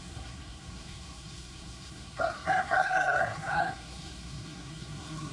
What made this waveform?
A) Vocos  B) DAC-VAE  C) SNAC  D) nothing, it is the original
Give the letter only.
C